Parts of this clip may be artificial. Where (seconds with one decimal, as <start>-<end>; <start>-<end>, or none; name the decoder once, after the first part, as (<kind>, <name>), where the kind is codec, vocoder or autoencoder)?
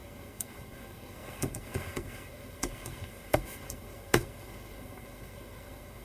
0.0-6.0 (codec, SNAC)